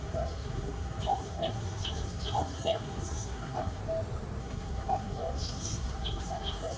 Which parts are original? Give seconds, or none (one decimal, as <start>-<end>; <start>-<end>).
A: 3.8-4.4